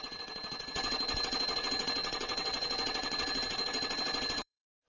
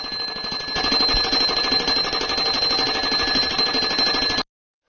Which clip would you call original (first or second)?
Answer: second